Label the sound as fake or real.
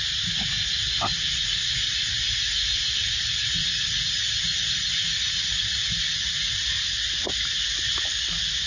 real